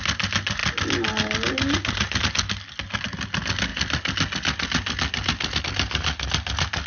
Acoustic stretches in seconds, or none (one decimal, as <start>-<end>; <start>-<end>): 0.0-6.9